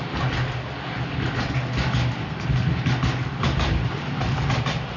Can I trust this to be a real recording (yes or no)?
yes